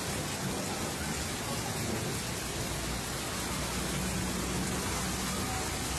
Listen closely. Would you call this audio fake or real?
real